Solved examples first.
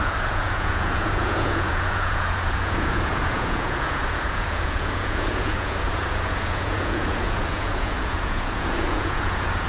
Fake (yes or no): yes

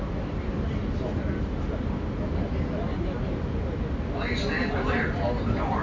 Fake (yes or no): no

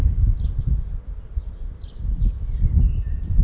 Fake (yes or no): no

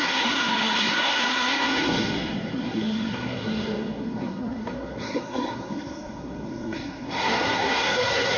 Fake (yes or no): yes